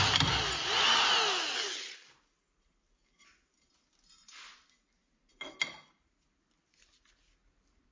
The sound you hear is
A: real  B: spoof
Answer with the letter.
A